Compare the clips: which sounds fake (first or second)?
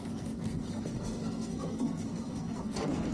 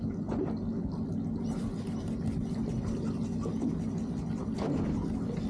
first